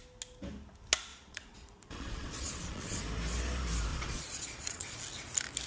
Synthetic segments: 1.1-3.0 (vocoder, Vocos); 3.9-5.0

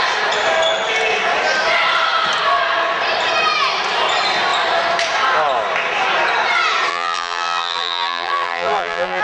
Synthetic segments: 6.9-9.2 (vocoder, BigVGAN v2)